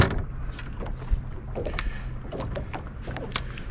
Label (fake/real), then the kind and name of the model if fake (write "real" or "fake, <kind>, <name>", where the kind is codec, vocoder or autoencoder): real